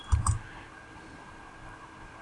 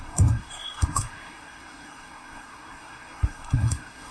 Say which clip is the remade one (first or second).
second